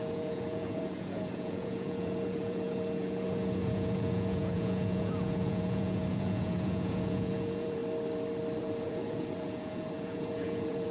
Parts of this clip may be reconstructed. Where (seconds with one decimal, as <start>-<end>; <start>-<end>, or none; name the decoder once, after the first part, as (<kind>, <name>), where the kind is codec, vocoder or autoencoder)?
0.0-7.8 (vocoder, Vocos); 8.6-10.9